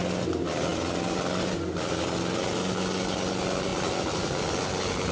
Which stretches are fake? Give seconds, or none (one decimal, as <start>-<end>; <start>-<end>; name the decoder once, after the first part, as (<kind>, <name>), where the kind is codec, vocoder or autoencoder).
none